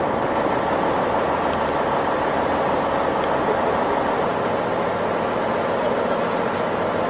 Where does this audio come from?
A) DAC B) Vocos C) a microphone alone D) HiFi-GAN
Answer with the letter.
C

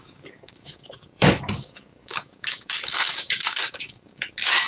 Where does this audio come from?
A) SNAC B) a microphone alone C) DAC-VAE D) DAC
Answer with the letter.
D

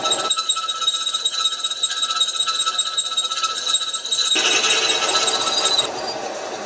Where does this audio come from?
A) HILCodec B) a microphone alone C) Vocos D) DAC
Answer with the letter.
B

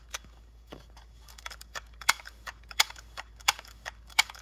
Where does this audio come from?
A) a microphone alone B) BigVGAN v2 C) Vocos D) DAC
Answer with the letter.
D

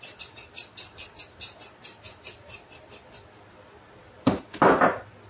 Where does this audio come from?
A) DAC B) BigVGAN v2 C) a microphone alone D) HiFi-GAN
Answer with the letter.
C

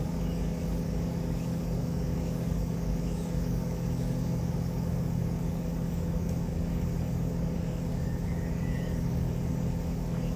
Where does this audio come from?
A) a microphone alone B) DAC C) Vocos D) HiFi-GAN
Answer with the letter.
B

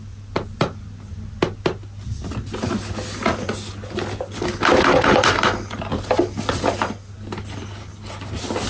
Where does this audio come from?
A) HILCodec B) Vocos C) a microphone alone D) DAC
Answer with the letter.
C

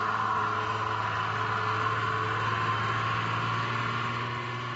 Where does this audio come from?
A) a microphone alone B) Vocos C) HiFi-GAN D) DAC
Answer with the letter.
A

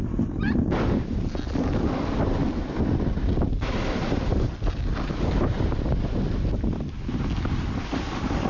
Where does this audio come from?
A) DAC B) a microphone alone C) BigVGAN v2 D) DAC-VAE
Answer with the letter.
B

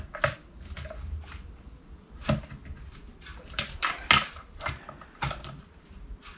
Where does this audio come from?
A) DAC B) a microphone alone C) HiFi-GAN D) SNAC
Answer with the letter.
B